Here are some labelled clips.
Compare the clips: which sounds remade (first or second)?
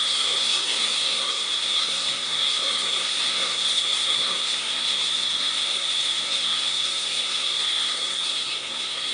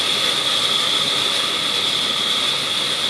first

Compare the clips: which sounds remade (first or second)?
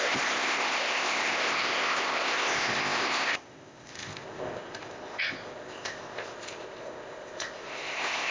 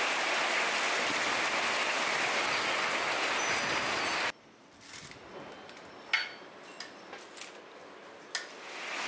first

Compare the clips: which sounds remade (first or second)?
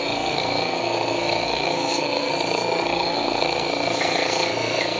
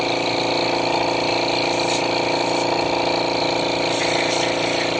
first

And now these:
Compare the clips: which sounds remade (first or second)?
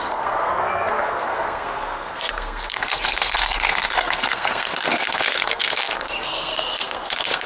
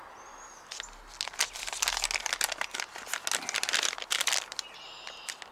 first